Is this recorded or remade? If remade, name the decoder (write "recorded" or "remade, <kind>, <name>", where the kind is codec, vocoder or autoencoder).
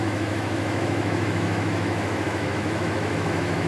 remade, autoencoder, DAC-VAE